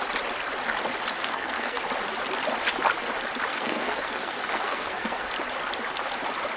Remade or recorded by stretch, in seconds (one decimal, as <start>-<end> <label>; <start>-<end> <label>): 0.0-1.2 recorded; 1.2-1.8 remade; 1.8-3.5 recorded; 3.5-5.3 remade; 5.3-6.6 recorded